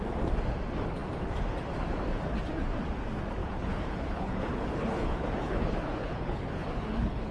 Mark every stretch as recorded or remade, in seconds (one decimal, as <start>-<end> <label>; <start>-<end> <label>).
0.0-3.4 recorded; 3.4-7.3 remade